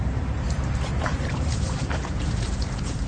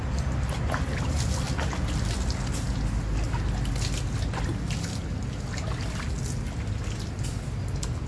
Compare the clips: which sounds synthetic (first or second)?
first